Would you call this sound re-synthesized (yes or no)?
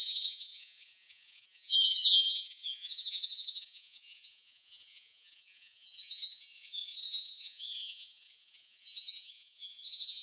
yes